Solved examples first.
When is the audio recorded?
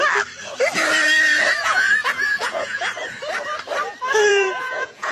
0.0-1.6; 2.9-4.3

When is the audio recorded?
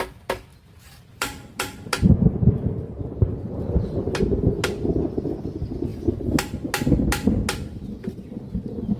0.0-0.5; 4.1-9.0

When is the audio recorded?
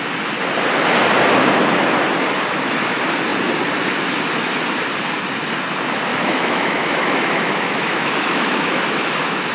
0.0-6.1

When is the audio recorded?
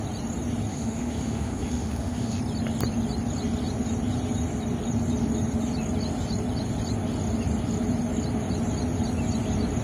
0.0-0.7; 2.4-9.8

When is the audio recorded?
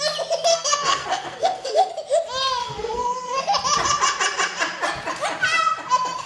0.0-0.5; 1.9-2.6; 3.4-6.3